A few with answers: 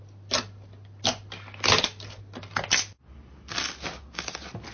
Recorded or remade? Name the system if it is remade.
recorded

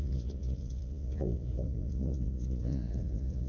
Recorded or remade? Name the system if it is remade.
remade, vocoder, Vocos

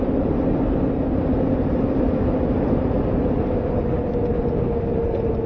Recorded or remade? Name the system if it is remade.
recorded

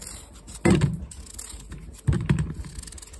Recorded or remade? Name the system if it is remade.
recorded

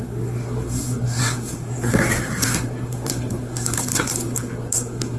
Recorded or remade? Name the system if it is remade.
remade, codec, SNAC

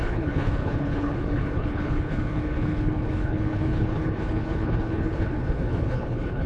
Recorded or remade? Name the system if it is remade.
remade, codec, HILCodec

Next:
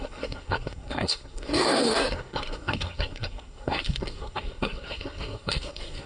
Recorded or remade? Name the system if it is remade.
remade, codec, SNAC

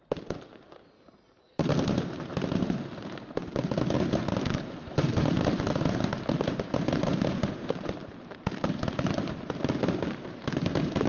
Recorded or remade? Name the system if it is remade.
remade, vocoder, BigVGAN v2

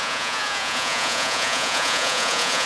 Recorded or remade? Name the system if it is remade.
remade, vocoder, Vocos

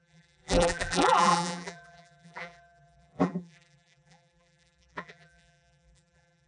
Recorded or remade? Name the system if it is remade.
remade, vocoder, BigVGAN v2